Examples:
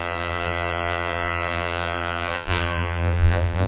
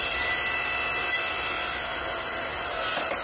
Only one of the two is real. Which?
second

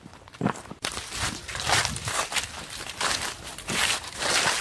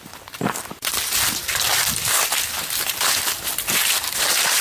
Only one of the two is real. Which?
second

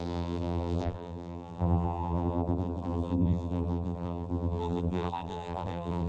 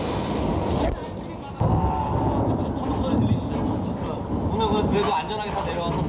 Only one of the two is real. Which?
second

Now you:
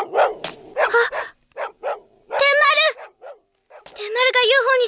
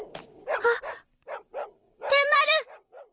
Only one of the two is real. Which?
first